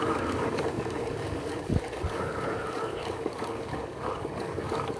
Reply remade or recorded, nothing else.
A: remade